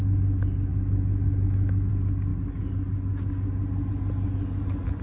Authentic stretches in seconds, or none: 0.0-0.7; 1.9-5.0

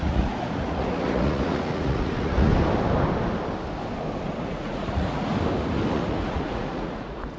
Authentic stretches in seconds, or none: 2.5-4.4; 5.3-5.9

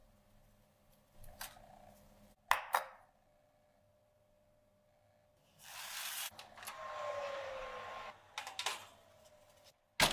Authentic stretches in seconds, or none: 0.0-10.1